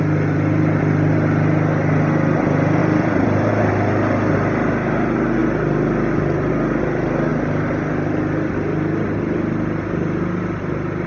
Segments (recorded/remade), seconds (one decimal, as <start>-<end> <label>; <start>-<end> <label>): 0.0-2.8 recorded; 2.8-3.5 remade; 3.5-11.1 recorded